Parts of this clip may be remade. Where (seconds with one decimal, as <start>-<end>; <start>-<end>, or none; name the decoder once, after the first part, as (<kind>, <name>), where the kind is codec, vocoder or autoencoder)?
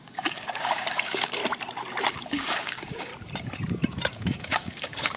0.0-1.4 (codec, DAC); 2.1-3.1; 4.1-5.2